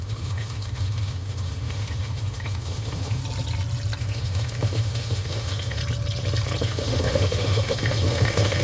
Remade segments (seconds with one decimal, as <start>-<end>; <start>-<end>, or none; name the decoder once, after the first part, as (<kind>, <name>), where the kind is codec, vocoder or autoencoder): 0.0-3.2 (autoencoder, DAC-VAE); 4.0-5.8; 6.6-8.6

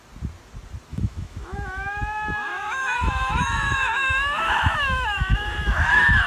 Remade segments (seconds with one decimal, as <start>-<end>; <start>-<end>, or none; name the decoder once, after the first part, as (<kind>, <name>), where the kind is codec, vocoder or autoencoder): 0.9-2.0 (autoencoder, DAC-VAE); 2.5-6.3